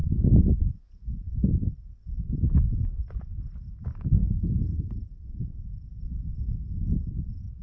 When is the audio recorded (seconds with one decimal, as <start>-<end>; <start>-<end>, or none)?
0.7-4.2; 6.0-7.6